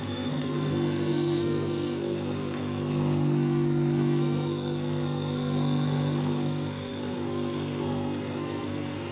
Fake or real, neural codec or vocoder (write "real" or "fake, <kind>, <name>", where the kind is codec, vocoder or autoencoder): fake, codec, SNAC